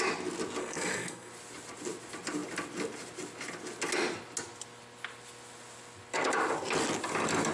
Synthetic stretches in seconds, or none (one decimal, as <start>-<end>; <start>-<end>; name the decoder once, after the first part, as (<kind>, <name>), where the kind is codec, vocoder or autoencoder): 0.6-1.3 (codec, SNAC)